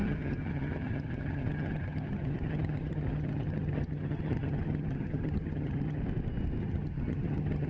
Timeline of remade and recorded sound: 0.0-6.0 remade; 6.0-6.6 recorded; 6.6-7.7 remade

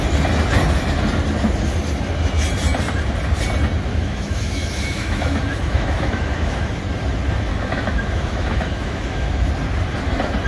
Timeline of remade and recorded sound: 0.0-3.9 recorded; 3.9-6.8 remade; 6.8-7.5 recorded; 7.5-9.5 remade; 9.5-10.5 recorded

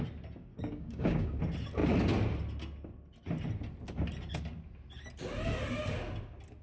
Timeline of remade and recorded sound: 0.0-0.5 recorded; 0.5-1.4 remade; 1.4-6.6 recorded

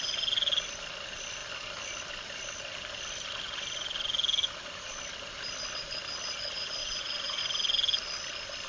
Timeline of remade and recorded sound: 0.0-6.8 recorded; 6.8-7.4 remade; 7.4-8.7 recorded

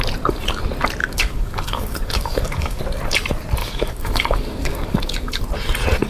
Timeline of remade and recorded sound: 0.0-1.0 recorded; 1.0-2.8 remade; 2.8-3.6 recorded; 3.6-5.4 remade; 5.4-6.1 recorded

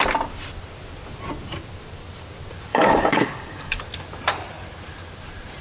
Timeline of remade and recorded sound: 0.0-2.7 recorded; 2.7-3.8 remade; 3.8-5.6 recorded